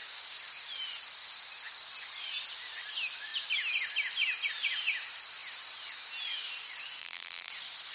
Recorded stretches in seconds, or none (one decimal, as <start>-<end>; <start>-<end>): 0.0-7.0; 7.5-7.9